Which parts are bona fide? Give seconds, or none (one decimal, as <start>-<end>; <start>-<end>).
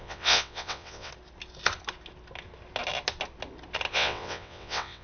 1.1-3.9